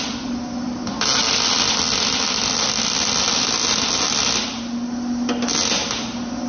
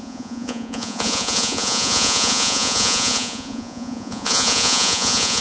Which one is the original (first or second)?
first